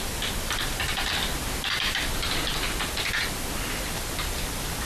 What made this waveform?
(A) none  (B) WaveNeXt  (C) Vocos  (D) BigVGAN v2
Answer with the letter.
A